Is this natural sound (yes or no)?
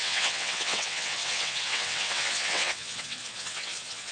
no